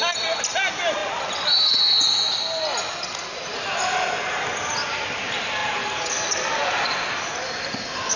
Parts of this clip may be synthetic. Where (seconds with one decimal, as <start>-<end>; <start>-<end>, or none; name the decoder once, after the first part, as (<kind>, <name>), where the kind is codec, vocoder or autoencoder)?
none